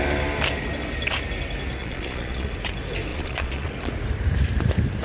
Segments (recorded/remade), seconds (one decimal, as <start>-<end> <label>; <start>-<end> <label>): 0.0-1.8 recorded; 1.8-2.5 remade; 2.5-3.1 recorded; 3.1-3.7 remade; 3.7-5.0 recorded

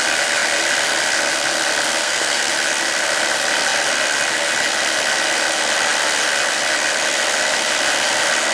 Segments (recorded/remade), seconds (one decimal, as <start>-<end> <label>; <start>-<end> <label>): 0.0-2.0 recorded; 2.0-2.5 remade; 2.5-8.5 recorded

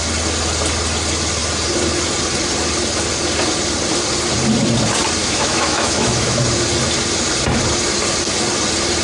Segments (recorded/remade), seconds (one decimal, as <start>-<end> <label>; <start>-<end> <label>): 0.0-5.2 recorded; 5.2-6.4 remade; 6.4-9.0 recorded

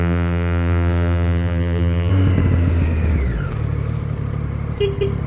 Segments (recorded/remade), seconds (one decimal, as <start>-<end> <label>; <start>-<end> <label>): 0.0-2.1 remade; 2.1-5.3 recorded

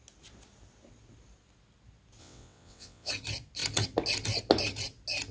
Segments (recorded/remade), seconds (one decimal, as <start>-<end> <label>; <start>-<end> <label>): 0.0-2.2 recorded; 2.2-3.1 remade; 3.1-5.3 recorded

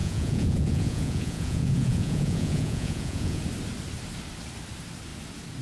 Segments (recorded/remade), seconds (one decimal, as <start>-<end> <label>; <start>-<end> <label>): 0.0-3.4 remade; 3.4-5.6 recorded

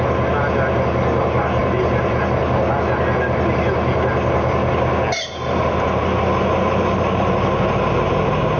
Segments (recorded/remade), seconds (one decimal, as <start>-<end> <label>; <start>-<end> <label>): 0.0-1.6 recorded; 1.6-2.2 remade; 2.2-8.6 recorded